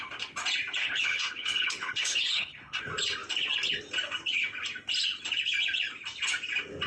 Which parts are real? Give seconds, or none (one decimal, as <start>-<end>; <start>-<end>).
0.0-0.8; 2.8-6.9